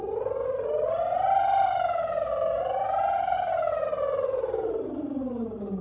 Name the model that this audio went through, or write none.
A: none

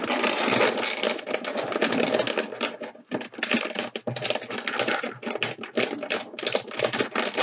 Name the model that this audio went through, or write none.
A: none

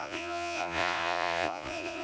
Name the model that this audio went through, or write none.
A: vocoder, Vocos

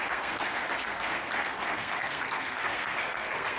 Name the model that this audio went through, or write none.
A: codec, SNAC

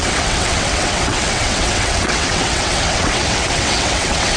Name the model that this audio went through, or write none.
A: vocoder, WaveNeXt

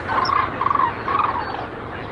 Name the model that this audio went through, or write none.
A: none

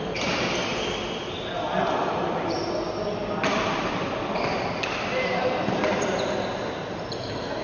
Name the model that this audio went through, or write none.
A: none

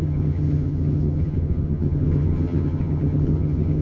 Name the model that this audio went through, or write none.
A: vocoder, HiFi-GAN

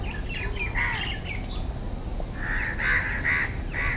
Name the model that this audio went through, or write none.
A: none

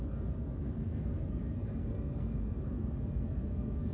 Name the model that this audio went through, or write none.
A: codec, SNAC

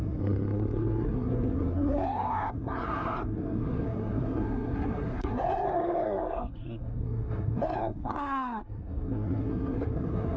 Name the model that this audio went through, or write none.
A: codec, SNAC